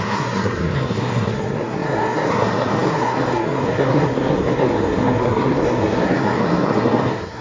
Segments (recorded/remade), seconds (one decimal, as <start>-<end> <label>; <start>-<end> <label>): 0.0-7.4 remade

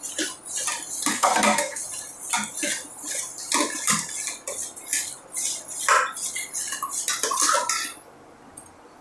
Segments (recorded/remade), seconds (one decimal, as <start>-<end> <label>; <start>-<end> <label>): 0.0-1.1 recorded; 1.1-1.8 remade; 1.8-9.0 recorded

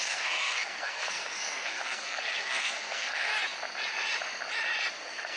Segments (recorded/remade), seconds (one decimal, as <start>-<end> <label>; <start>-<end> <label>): 0.0-3.3 remade; 3.3-4.9 recorded; 4.9-5.4 remade

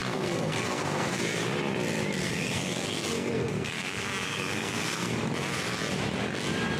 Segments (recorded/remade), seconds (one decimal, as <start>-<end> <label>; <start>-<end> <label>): 0.0-1.2 remade; 1.2-2.2 recorded; 2.2-5.1 remade; 5.1-6.8 recorded

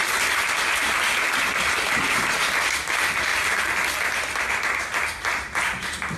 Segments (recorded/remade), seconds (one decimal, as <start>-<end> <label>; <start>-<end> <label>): 0.0-6.2 recorded